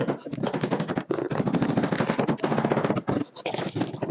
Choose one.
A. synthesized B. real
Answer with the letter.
B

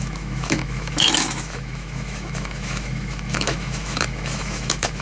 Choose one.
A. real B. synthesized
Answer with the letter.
B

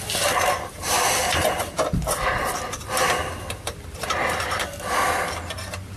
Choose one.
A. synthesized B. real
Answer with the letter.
B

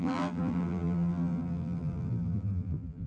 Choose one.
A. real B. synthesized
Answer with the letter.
B